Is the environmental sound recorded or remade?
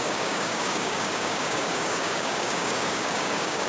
remade